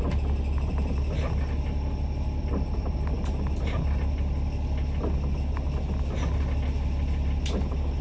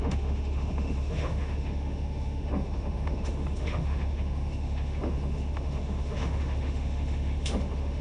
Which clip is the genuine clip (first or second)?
first